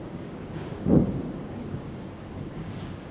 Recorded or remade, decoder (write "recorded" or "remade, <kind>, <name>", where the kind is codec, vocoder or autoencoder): remade, codec, DAC